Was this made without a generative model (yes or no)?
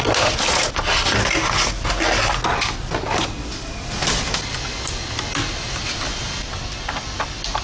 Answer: yes